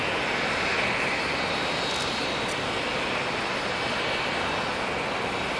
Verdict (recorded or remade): recorded